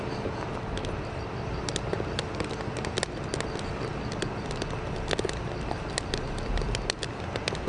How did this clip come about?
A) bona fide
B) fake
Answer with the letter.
A